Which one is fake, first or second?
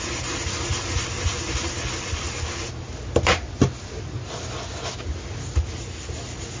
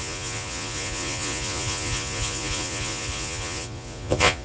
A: second